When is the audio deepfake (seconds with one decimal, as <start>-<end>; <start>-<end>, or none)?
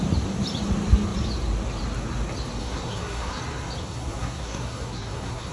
2.6-3.4; 3.8-5.5